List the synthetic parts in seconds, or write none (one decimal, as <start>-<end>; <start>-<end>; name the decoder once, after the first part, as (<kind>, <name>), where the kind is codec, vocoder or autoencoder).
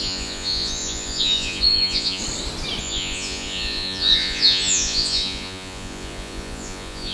0.0-2.2 (vocoder, Vocos); 2.8-7.1